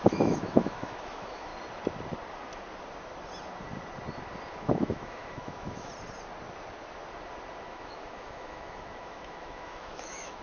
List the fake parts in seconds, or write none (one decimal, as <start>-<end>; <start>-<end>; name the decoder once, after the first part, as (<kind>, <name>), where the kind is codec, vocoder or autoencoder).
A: 0.0-1.5 (autoencoder, DAC-VAE); 4.5-5.9; 7.7-10.4